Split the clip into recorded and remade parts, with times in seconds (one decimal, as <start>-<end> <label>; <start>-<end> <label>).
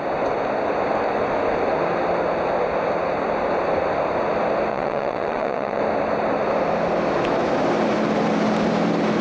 0.0-4.7 recorded; 4.7-5.8 remade; 5.8-9.2 recorded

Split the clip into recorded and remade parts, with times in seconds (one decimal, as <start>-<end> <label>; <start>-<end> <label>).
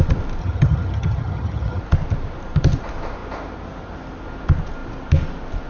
0.0-0.4 recorded; 0.4-1.8 remade; 1.8-5.7 recorded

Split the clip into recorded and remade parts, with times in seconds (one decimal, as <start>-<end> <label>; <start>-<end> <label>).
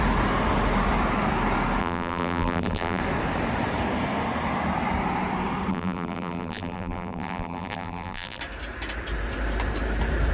0.0-1.8 recorded; 1.8-3.0 remade; 3.0-5.7 recorded; 5.7-8.4 remade; 8.4-10.3 recorded